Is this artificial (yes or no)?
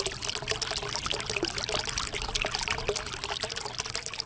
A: no